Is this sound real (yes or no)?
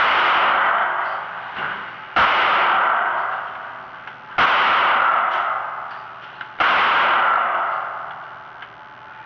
yes